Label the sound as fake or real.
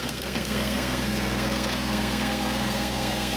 fake